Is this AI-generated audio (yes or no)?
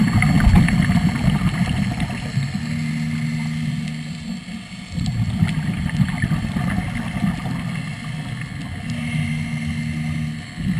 no